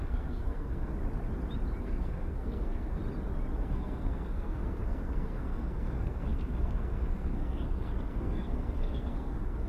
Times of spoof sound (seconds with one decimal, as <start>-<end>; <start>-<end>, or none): 0.0-0.9; 1.8-3.0; 3.6-9.7